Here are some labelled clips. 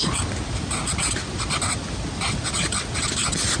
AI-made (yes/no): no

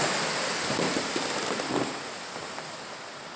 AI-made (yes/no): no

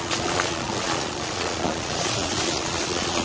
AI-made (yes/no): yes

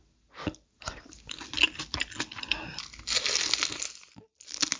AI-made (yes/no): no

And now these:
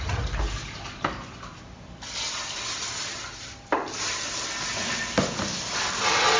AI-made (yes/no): no